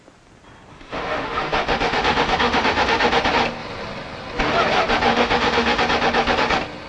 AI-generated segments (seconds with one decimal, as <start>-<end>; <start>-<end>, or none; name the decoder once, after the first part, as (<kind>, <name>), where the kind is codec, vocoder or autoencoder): 0.7-3.2 (autoencoder, DAC-VAE); 5.1-5.8